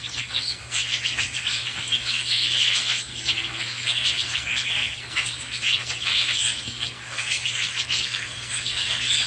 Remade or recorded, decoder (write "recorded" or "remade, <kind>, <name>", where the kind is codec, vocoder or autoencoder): remade, codec, SNAC